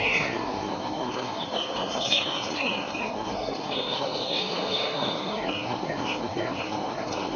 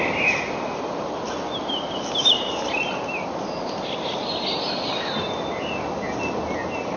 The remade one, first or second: first